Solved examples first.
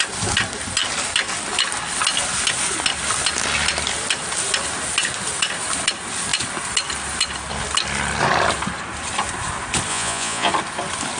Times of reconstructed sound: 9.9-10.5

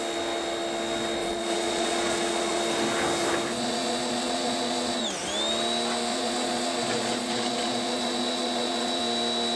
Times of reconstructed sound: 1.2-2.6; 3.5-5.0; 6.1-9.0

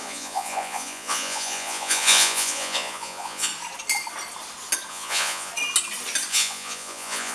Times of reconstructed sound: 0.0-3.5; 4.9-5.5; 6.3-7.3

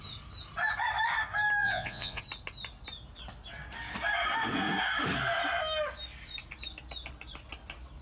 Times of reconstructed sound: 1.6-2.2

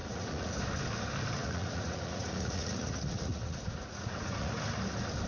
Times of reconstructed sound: 0.0-0.5; 1.4-4.6